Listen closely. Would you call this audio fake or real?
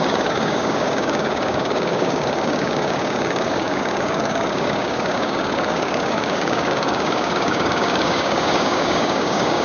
fake